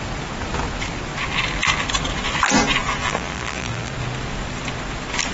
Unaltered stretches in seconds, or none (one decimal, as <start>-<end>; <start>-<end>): 0.0-3.0; 3.9-5.3